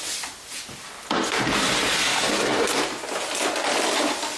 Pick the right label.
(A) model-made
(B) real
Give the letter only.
B